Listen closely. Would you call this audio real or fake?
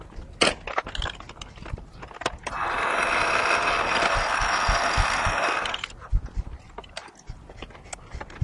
real